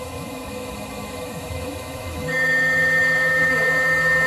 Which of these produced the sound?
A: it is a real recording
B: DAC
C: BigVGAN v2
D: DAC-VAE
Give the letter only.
D